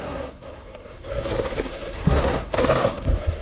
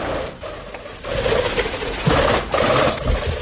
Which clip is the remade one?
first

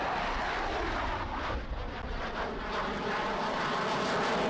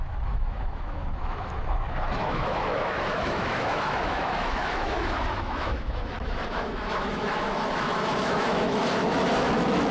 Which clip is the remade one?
second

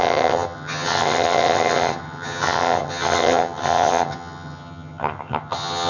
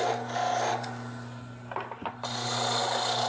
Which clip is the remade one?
first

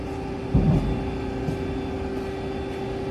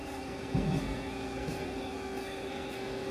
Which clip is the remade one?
second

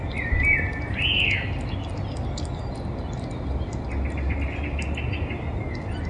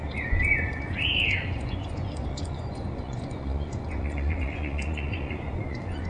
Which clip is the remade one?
second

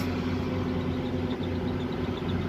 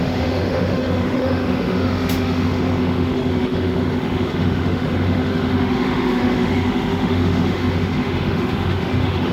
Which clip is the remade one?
second